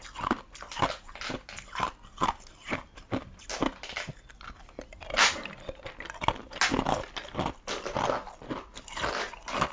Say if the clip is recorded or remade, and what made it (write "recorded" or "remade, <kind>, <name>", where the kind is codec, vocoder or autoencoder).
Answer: recorded